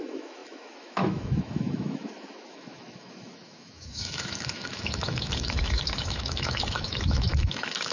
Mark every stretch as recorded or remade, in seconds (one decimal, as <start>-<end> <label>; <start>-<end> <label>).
0.0-7.9 remade